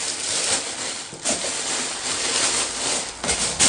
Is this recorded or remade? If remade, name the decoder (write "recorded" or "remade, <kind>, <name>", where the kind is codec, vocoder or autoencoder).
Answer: recorded